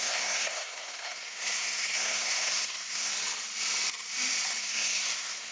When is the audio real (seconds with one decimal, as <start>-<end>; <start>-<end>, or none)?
3.1-4.6